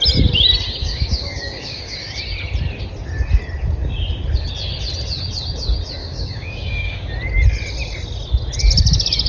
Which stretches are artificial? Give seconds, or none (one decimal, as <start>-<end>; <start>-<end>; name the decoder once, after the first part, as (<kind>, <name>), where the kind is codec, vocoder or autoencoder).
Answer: 0.8-2.2 (codec, DAC); 6.0-7.1